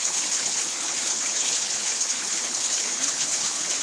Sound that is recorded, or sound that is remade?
remade